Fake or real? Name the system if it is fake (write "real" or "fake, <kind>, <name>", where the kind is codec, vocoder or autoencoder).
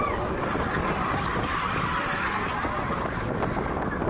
real